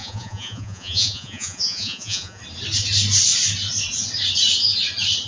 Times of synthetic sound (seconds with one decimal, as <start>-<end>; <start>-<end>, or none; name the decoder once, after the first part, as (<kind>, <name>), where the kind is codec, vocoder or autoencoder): 0.0-2.4 (vocoder, Vocos)